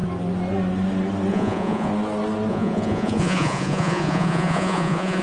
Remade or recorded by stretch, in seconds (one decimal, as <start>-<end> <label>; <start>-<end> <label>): 0.0-1.3 recorded; 1.3-1.9 remade; 1.9-2.5 recorded; 2.5-5.2 remade